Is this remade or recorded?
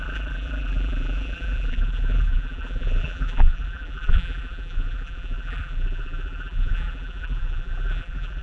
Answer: remade